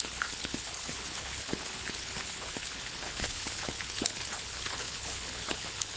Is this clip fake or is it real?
fake